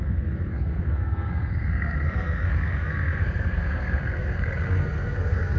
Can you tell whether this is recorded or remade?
remade